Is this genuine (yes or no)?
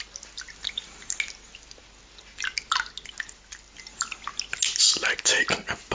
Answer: yes